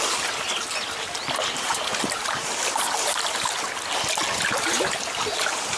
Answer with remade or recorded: recorded